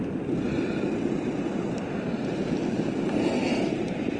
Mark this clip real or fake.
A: real